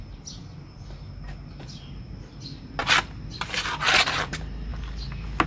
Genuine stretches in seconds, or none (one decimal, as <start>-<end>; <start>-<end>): 0.0-5.5